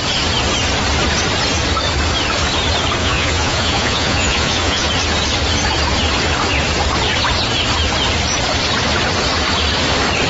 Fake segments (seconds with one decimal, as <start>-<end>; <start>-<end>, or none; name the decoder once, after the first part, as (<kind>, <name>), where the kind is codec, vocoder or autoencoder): 3.0-4.9 (vocoder, Vocos)